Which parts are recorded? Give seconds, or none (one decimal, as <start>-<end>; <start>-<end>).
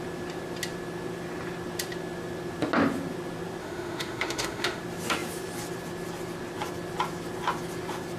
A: 0.0-3.6; 4.8-8.2